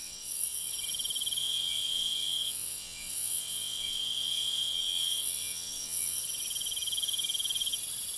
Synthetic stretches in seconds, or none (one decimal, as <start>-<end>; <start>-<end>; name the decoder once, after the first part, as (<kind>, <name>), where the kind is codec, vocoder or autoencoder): 0.0-0.7 (vocoder, WaveNeXt); 1.4-6.2